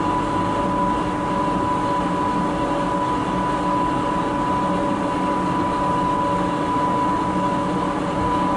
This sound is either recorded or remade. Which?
recorded